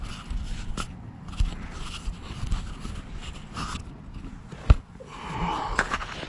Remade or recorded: recorded